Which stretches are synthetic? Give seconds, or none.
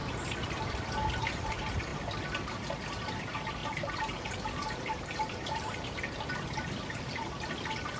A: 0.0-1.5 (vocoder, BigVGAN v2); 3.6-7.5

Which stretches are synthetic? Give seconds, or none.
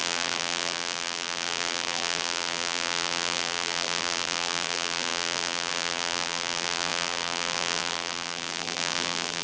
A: 0.0-9.4 (vocoder, BigVGAN v2)